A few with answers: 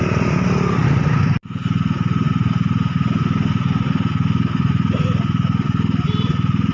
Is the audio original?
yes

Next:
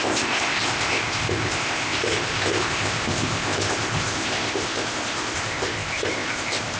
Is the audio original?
no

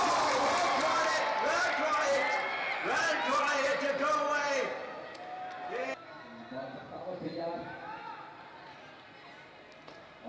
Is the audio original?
yes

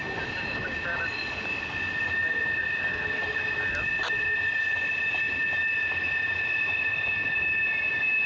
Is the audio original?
yes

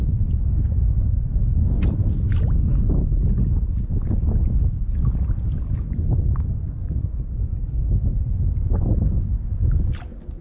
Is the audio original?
yes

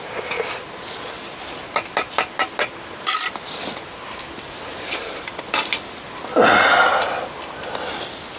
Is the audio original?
yes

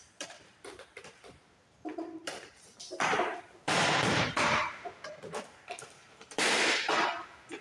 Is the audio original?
no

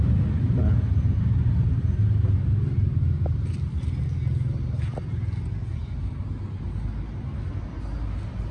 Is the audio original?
yes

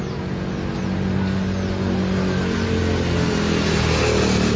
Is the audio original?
yes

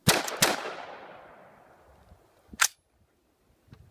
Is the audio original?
yes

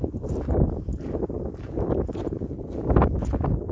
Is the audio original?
no